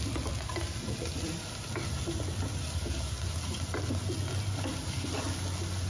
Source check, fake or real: real